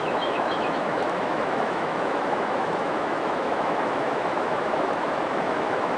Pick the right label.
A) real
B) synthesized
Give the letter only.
B